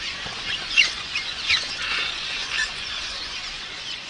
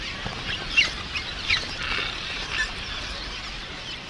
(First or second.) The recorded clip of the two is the second